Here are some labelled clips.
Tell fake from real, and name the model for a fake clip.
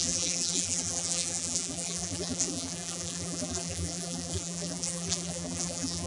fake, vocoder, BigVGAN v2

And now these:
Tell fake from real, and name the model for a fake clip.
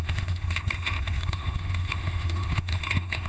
fake, autoencoder, DAC-VAE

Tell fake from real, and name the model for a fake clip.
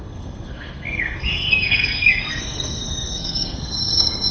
fake, codec, SNAC